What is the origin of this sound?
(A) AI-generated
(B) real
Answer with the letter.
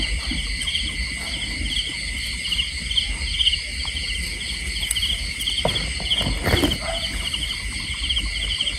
B